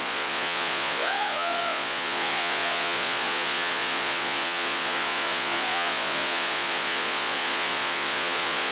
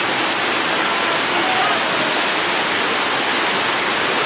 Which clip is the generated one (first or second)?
first